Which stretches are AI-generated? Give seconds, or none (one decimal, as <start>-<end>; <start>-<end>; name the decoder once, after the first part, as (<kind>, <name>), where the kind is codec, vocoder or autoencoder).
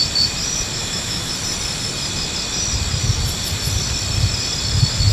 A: 0.8-1.3 (autoencoder, DAC-VAE)